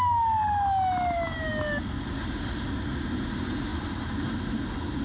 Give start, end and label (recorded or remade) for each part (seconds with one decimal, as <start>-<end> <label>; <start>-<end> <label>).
0.0-3.7 recorded; 3.7-4.6 remade; 4.6-5.0 recorded